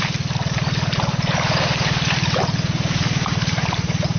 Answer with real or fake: real